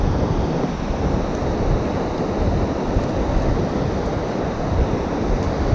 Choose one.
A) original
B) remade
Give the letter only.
A